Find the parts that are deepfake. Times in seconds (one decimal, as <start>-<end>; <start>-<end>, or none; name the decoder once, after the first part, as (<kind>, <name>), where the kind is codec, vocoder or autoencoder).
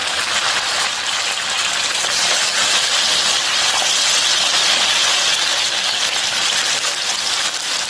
none